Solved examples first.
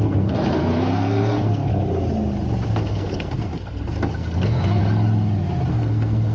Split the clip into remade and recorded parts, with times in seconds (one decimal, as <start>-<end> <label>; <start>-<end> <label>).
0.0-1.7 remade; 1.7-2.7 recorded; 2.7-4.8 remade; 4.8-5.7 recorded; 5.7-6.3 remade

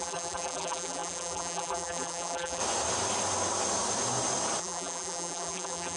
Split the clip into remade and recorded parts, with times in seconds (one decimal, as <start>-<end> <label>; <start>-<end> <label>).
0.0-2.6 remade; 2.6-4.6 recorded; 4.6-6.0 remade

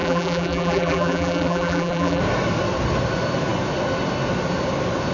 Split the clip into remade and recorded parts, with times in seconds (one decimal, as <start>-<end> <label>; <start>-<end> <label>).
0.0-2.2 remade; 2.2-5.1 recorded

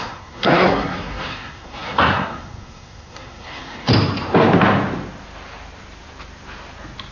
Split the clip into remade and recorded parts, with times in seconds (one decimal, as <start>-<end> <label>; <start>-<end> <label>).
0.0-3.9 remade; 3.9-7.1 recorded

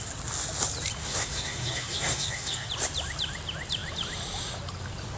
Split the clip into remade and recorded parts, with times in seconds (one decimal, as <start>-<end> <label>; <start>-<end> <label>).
0.0-1.0 recorded; 1.0-2.7 remade; 2.7-5.2 recorded

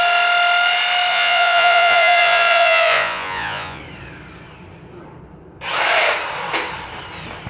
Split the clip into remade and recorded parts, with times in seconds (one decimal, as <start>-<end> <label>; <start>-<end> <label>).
0.0-1.1 recorded; 1.1-3.8 remade; 3.8-7.5 recorded

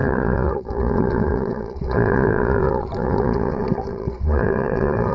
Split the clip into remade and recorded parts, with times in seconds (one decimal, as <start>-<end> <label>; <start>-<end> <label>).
0.0-5.1 remade

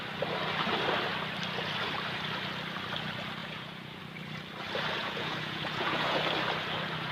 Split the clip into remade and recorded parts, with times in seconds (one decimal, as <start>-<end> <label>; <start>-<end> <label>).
0.0-3.4 recorded; 3.4-4.0 remade; 4.0-5.0 recorded; 5.0-6.2 remade; 6.2-7.1 recorded